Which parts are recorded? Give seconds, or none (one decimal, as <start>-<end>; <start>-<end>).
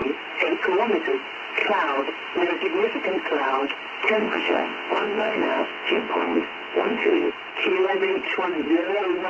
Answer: 0.0-4.2; 7.3-9.3